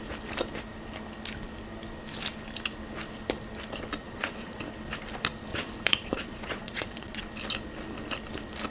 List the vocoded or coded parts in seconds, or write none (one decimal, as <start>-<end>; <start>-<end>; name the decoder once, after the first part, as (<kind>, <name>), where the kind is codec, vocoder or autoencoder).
4.0-4.6 (vocoder, Vocos); 5.5-7.2